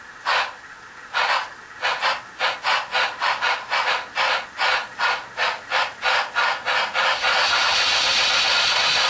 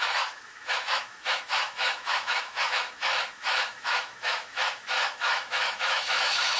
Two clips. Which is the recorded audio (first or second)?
first